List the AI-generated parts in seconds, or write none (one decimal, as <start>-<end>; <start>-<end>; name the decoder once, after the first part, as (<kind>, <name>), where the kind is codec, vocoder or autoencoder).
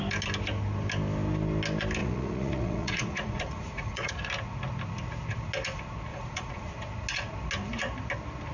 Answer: 2.0-4.1 (vocoder, Vocos); 6.1-6.7